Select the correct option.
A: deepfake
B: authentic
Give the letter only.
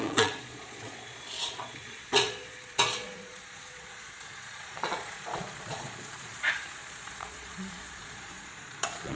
A